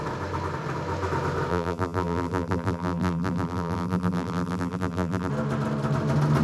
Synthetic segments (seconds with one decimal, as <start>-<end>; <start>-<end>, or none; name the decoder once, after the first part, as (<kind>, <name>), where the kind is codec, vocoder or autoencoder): 1.5-5.3 (vocoder, BigVGAN v2)